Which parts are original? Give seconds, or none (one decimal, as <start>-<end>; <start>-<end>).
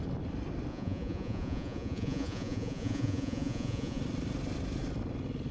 0.0-0.7; 4.0-5.5